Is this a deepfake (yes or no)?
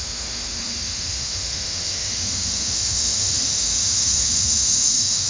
yes